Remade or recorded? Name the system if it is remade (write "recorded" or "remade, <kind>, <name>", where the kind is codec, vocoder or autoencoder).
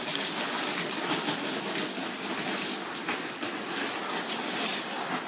recorded